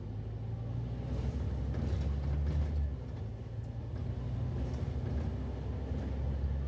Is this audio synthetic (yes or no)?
no